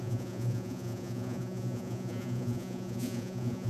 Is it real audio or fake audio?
fake